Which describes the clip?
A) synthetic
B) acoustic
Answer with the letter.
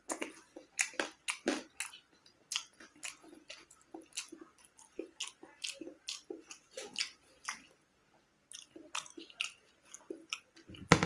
B